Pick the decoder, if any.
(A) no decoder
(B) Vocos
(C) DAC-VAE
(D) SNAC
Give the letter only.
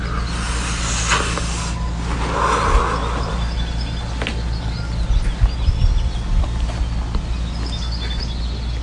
A